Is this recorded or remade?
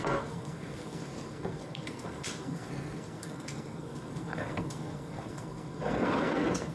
remade